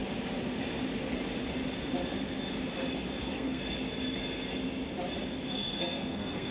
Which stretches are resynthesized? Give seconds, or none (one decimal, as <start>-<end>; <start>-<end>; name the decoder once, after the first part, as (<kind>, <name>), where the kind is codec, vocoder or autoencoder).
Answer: 3.2-3.6 (codec, SNAC); 5.5-6.5